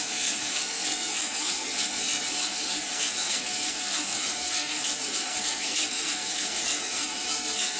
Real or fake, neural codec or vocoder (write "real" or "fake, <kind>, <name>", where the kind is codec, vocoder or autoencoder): fake, codec, SNAC